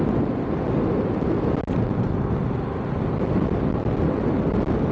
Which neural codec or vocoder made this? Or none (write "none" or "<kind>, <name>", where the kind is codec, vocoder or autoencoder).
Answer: none